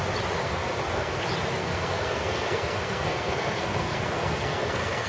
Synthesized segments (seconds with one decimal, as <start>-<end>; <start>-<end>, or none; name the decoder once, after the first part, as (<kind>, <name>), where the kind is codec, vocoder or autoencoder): 0.4-1.2 (codec, SNAC); 1.6-5.1